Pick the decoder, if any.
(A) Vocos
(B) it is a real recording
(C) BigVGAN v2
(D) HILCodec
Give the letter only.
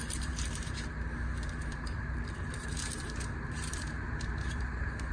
C